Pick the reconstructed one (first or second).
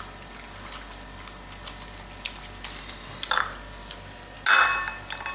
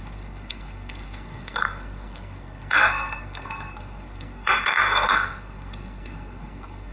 second